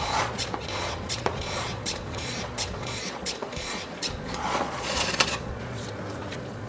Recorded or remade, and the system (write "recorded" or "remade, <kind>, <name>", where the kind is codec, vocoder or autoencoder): remade, vocoder, Vocos